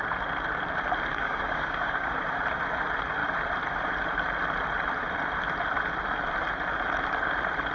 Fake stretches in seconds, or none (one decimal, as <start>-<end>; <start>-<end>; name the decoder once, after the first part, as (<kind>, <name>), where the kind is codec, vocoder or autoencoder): 1.1-2.1 (codec, DAC)